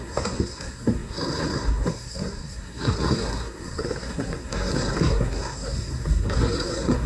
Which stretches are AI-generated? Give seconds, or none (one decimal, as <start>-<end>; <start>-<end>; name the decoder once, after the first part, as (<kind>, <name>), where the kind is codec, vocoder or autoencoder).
0.0-7.1 (codec, SNAC)